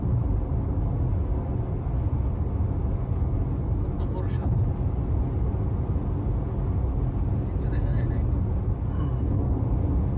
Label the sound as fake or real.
real